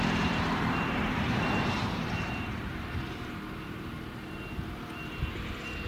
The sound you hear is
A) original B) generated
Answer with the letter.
B